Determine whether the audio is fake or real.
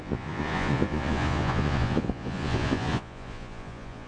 fake